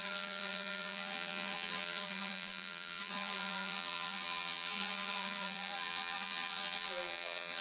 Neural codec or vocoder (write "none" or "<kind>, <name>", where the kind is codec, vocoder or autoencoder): vocoder, BigVGAN v2